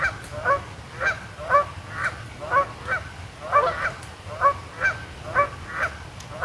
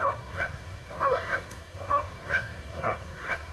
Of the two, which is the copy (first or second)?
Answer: second